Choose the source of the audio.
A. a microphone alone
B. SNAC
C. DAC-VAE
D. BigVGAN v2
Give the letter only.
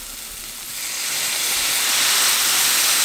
A